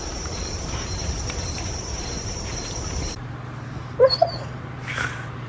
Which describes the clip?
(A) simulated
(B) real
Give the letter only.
A